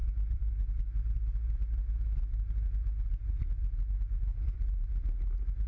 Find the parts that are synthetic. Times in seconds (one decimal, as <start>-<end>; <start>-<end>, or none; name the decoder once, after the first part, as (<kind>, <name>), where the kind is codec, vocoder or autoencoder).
0.0-0.5 (vocoder, BigVGAN v2)

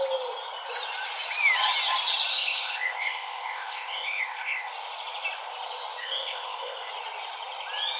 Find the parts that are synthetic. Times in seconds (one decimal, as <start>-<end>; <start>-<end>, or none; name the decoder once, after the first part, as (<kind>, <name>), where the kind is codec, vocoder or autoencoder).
2.3-4.7 (codec, ZipCodec); 6.0-6.9

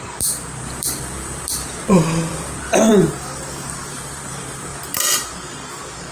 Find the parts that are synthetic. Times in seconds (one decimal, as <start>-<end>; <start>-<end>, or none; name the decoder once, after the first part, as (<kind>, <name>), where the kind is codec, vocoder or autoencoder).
0.0-2.3 (vocoder, BigVGAN v2); 2.9-4.7

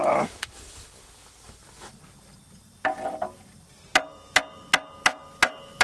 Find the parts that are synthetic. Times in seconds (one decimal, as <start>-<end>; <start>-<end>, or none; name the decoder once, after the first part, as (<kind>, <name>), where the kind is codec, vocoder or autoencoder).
0.0-1.9 (autoencoder, DAC-VAE)

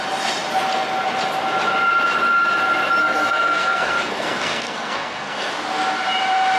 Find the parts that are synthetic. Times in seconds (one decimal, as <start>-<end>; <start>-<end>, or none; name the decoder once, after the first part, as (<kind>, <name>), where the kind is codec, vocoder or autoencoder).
3.0-5.5 (codec, SNAC)

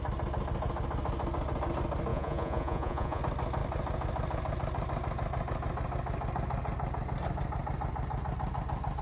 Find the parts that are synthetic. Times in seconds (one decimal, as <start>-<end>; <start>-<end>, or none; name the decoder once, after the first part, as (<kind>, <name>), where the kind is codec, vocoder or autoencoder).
2.1-3.2 (vocoder, Vocos)

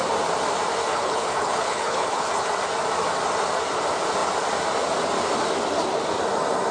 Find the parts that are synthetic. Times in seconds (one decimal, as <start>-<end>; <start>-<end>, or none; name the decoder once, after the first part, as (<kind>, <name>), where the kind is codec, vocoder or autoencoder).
0.9-2.5 (codec, HILCodec)